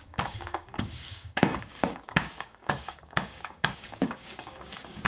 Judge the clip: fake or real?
fake